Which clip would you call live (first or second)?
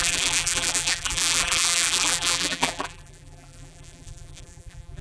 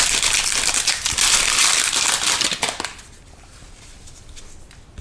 second